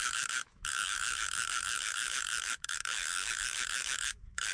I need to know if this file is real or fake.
fake